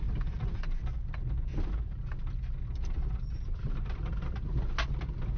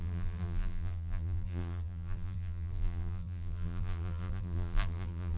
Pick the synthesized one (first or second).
second